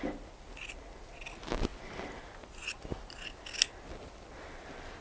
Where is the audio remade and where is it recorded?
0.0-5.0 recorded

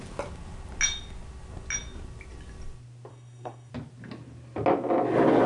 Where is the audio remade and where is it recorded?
0.0-3.1 recorded; 3.1-3.7 remade; 3.7-5.5 recorded

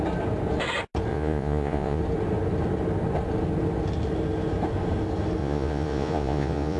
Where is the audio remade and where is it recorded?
0.0-1.1 recorded; 1.1-2.0 remade; 2.0-5.4 recorded; 5.4-6.8 remade

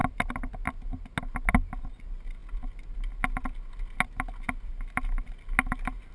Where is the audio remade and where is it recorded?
0.0-6.1 recorded

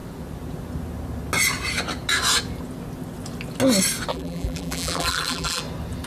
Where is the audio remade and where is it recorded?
0.0-4.1 recorded; 4.1-5.6 remade; 5.6-6.1 recorded